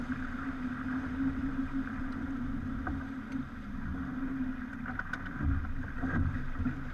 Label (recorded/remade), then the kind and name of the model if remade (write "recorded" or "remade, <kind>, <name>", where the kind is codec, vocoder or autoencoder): recorded